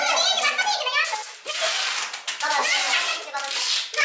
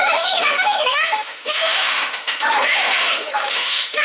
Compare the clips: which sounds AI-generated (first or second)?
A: second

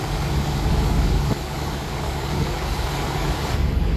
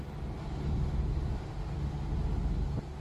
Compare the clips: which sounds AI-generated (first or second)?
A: first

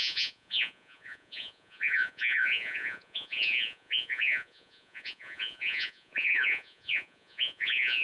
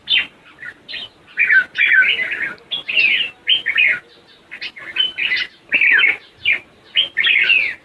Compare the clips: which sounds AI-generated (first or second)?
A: first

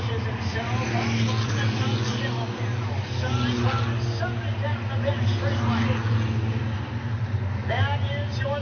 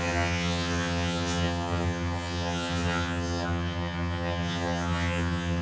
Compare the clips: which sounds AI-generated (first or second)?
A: second